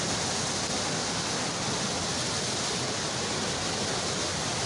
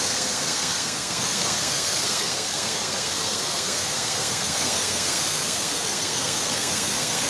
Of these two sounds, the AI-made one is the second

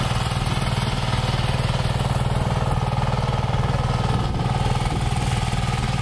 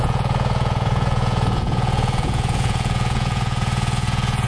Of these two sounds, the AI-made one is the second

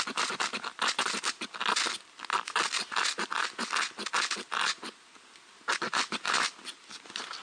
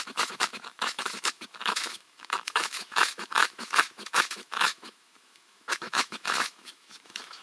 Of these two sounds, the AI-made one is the second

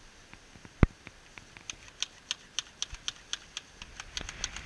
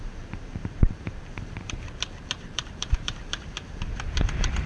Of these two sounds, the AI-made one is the second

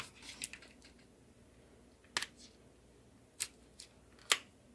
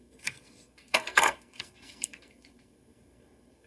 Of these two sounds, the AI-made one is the second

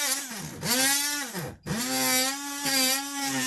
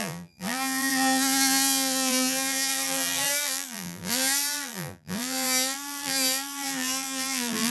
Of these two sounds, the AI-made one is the second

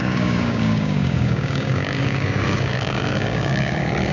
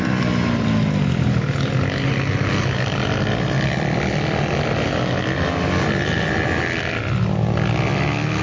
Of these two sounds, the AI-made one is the first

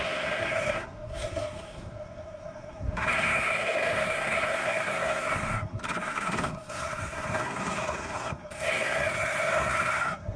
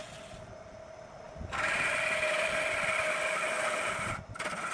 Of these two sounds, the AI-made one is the first